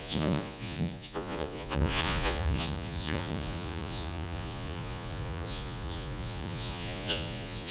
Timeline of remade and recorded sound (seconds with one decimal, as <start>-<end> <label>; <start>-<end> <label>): 0.0-7.7 remade